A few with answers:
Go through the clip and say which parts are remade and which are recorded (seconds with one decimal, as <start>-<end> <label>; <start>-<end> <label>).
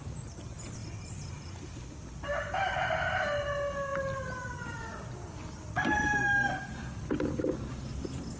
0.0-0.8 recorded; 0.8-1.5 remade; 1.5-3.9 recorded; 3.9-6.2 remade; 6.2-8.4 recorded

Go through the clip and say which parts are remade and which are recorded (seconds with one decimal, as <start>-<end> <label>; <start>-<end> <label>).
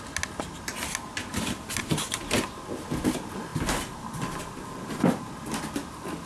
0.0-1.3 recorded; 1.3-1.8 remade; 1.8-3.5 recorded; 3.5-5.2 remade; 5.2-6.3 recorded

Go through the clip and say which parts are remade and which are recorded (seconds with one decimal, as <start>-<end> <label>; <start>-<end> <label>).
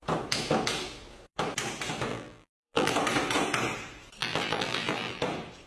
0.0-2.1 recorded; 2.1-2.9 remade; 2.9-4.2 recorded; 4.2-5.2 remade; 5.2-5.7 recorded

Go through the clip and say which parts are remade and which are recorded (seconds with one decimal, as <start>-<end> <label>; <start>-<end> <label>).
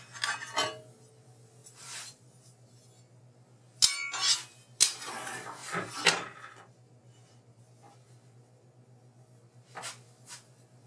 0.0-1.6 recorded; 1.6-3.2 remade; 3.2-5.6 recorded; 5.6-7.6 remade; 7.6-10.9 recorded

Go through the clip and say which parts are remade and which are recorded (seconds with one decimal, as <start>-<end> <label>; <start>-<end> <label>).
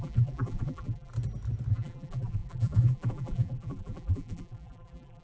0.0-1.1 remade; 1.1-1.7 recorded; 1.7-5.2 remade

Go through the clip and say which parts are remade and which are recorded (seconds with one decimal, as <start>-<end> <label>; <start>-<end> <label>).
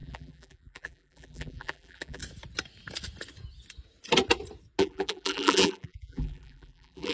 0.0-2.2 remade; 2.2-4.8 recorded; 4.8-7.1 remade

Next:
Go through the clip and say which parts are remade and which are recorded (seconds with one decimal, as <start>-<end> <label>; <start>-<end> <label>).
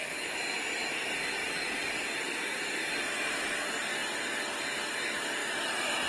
0.0-1.4 recorded; 1.4-2.9 remade; 2.9-5.4 recorded; 5.4-6.1 remade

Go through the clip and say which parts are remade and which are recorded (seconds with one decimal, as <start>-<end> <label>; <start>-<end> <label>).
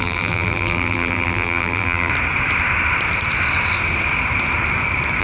0.0-2.1 remade; 2.1-5.2 recorded